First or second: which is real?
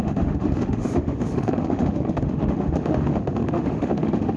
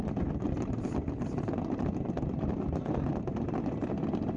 second